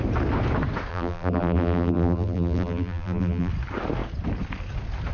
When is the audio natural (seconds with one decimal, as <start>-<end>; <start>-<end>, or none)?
0.0-0.9; 3.5-5.1

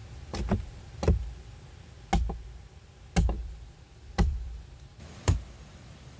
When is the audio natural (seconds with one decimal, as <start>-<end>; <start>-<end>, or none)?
0.0-3.4

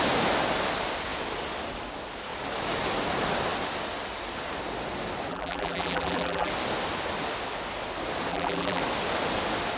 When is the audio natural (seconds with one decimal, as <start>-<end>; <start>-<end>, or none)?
0.0-5.3; 6.5-8.3; 8.8-9.8

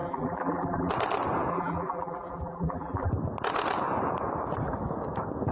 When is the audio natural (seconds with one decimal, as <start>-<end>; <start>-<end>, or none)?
0.9-1.5; 3.1-5.5

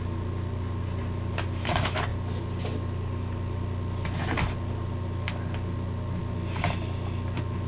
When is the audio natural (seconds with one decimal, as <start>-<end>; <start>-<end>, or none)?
0.0-7.7

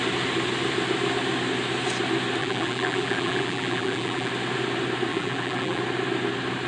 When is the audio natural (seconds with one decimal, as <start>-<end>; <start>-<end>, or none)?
0.0-2.4; 4.3-5.1; 5.8-6.7